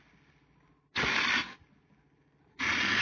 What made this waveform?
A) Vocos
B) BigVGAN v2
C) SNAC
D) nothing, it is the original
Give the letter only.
D